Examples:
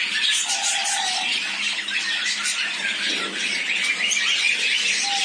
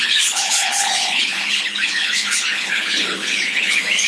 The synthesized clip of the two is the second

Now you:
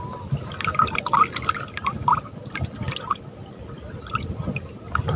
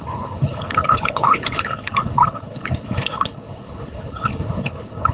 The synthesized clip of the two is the second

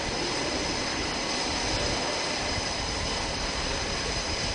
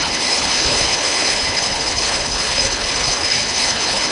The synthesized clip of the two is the second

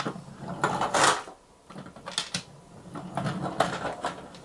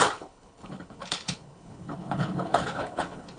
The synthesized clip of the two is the second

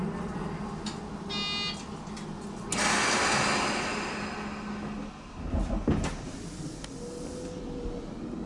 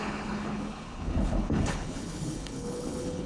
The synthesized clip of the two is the second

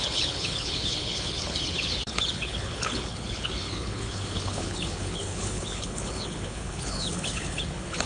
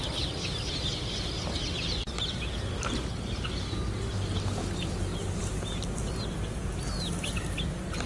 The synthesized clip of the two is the first